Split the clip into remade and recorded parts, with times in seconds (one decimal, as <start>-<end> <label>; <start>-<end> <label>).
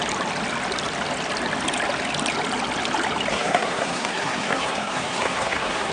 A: 0.0-3.3 recorded; 3.3-5.9 remade